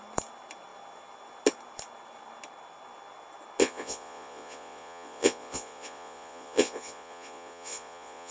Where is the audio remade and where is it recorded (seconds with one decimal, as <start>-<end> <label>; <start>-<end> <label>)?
0.0-3.6 recorded; 3.6-8.3 remade